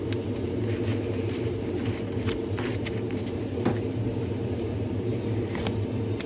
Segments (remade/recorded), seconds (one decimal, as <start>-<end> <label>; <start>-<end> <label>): 0.0-1.8 recorded; 1.8-5.6 remade; 5.6-6.3 recorded